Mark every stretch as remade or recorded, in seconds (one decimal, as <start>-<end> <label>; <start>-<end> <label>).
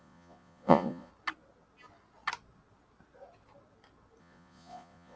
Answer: 0.0-1.1 remade; 1.1-4.2 recorded; 4.2-5.2 remade